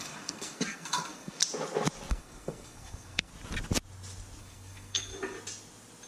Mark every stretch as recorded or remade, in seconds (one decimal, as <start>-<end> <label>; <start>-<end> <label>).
0.0-1.4 remade; 1.4-2.1 recorded; 2.1-3.3 remade; 3.3-4.4 recorded; 4.4-5.1 remade; 5.1-6.1 recorded